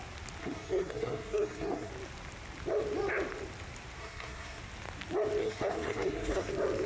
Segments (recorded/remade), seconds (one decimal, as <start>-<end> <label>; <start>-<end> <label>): 0.0-0.4 recorded; 0.4-1.9 remade; 1.9-4.0 recorded; 4.0-4.6 remade; 4.6-5.4 recorded; 5.4-6.5 remade; 6.5-6.9 recorded